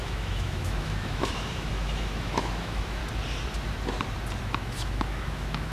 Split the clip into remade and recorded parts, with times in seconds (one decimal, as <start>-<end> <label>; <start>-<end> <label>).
0.0-3.0 remade; 3.0-4.4 recorded; 4.4-5.7 remade